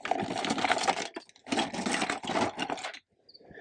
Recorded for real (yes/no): yes